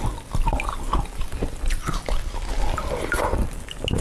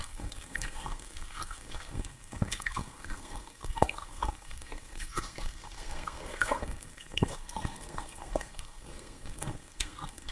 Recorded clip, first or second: first